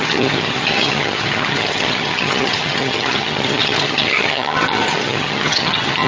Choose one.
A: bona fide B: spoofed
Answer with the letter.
B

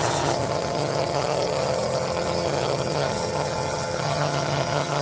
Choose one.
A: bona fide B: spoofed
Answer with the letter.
B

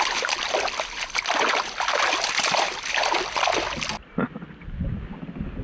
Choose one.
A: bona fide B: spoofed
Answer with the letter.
A